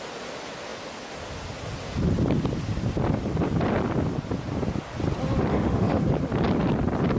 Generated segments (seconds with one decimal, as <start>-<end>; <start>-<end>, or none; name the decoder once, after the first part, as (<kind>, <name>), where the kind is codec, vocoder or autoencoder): 5.5-6.0 (autoencoder, DAC-VAE)

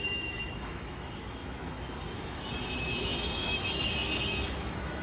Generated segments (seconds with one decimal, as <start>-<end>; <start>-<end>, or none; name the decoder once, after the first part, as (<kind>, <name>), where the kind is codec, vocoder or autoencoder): 0.0-5.0 (autoencoder, DAC-VAE)

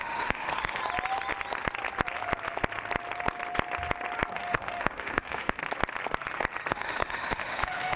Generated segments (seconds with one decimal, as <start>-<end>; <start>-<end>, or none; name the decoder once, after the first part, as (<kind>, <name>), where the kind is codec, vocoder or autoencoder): 0.0-0.8 (autoencoder, DAC-VAE); 4.3-5.6; 6.7-8.0

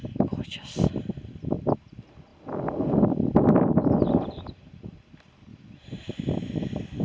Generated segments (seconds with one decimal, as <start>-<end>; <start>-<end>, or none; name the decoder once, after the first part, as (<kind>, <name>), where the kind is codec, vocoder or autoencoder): none

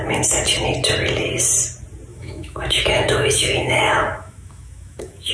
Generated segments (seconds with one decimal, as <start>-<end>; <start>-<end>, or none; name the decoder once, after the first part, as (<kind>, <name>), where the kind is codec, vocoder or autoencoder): 2.1-5.3 (autoencoder, DAC-VAE)

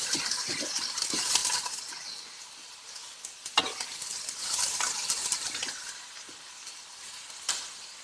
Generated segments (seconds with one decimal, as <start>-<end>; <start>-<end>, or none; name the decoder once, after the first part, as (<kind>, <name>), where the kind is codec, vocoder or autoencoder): none

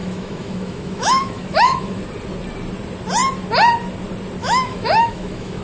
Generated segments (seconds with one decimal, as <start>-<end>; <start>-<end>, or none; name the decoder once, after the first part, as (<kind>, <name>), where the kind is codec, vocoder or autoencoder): 0.0-2.0 (autoencoder, DAC-VAE); 4.4-5.6

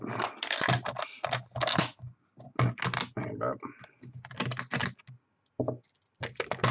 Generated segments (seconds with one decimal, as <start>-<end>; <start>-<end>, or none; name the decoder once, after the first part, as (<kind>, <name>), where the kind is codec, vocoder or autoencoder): none